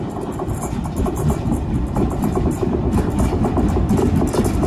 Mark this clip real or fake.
real